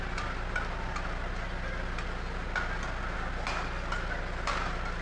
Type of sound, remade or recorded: recorded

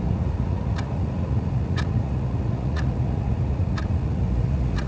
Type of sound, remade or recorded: remade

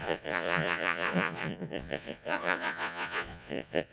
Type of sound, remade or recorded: remade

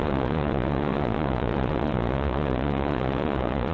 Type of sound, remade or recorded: remade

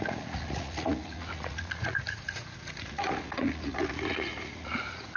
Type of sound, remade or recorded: remade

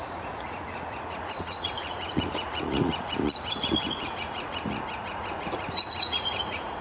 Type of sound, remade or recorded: remade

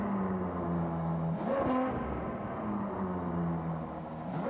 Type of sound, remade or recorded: recorded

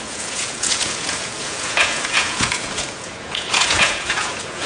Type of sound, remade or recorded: remade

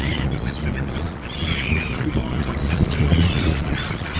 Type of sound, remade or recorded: remade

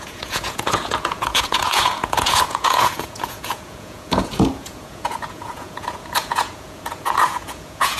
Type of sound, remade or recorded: remade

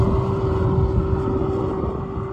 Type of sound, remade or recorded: recorded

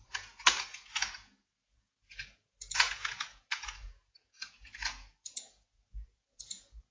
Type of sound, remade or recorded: remade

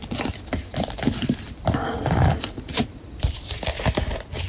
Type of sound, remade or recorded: recorded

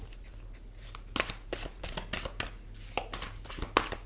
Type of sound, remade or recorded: recorded